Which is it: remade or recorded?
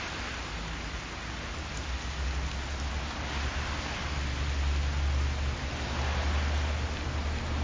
recorded